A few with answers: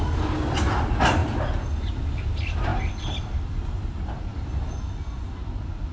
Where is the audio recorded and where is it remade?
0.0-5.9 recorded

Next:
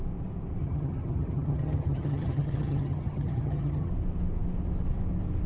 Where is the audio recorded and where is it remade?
0.0-0.6 recorded; 0.6-3.9 remade; 3.9-5.5 recorded

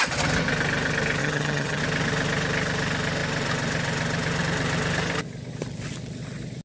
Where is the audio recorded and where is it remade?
0.0-1.2 recorded; 1.2-1.8 remade; 1.8-6.6 recorded

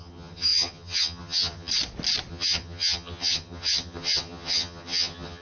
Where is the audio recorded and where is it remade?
0.0-1.7 remade; 1.7-2.3 recorded; 2.3-5.4 remade

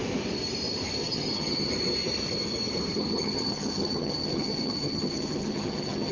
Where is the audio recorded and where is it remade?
0.0-1.0 recorded; 1.0-1.7 remade; 1.7-2.9 recorded; 2.9-6.1 remade

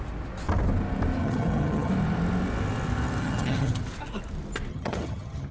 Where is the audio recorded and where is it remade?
0.0-1.2 recorded; 1.2-1.9 remade; 1.9-3.2 recorded; 3.2-3.8 remade; 3.8-4.7 recorded; 4.7-5.5 remade

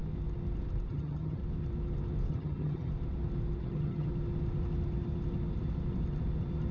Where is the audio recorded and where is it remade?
0.0-0.9 recorded; 0.9-1.4 remade; 1.4-2.3 recorded; 2.3-2.9 remade; 2.9-3.6 recorded; 3.6-4.1 remade; 4.1-6.7 recorded

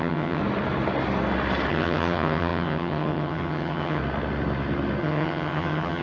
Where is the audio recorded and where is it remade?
0.0-0.4 remade; 0.4-1.7 recorded; 1.7-4.0 remade; 4.0-5.0 recorded; 5.0-6.0 remade